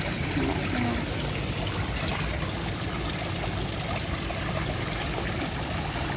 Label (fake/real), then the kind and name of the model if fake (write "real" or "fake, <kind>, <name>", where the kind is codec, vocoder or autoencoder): real